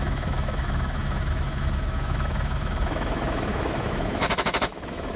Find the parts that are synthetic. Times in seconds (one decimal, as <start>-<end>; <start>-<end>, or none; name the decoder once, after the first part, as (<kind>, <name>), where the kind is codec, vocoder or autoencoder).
0.0-5.2 (autoencoder, DAC-VAE)